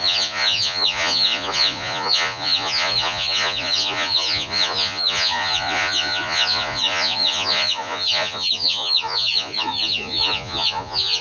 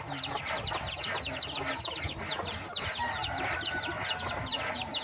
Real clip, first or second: second